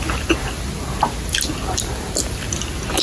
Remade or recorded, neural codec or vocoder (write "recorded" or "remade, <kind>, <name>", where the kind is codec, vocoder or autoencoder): recorded